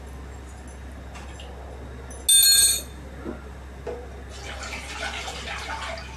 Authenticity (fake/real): real